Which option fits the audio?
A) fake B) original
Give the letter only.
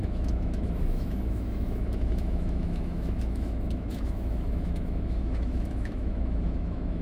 A